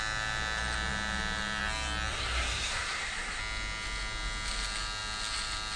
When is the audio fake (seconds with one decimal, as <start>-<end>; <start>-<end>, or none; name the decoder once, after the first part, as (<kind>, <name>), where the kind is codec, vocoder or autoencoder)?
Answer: 2.1-3.4 (codec, SNAC)